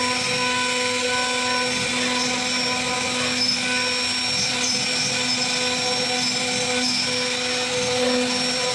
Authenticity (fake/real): real